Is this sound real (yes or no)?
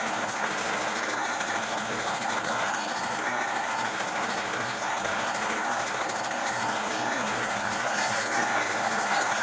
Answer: no